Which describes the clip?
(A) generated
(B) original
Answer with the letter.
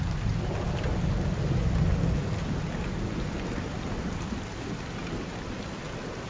B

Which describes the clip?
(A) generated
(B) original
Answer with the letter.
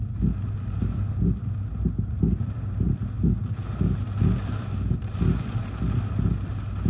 B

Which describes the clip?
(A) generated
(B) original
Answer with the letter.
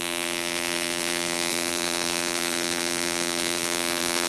A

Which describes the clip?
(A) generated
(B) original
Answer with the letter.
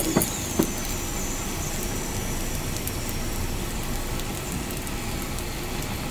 B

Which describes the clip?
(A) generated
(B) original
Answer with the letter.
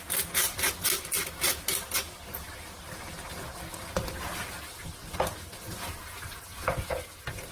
B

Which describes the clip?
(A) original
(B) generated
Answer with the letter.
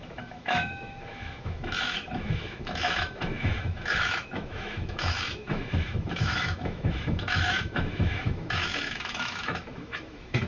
B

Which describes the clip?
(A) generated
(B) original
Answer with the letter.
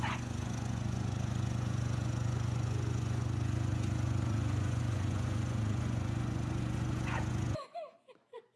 A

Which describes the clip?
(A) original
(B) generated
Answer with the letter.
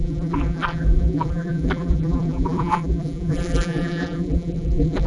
B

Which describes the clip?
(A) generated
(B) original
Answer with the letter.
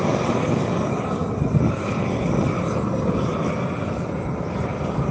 B